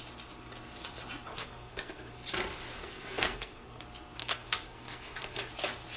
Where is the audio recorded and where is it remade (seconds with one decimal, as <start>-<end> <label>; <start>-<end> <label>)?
0.0-1.3 recorded; 1.3-2.1 remade; 2.1-2.8 recorded; 2.8-3.8 remade; 3.8-4.2 recorded; 4.2-5.5 remade; 5.5-6.0 recorded